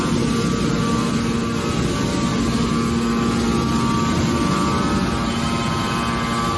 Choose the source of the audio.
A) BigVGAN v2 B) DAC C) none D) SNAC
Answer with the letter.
C